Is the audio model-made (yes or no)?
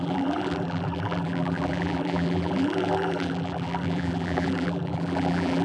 yes